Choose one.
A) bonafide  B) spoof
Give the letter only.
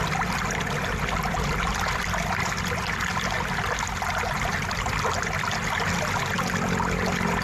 A